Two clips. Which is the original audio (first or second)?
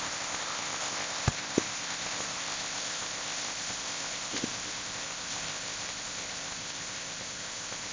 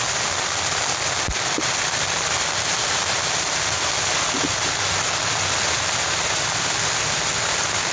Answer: second